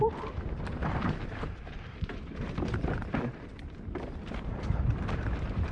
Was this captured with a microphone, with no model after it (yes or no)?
no